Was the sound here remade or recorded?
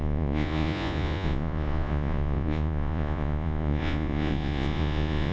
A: remade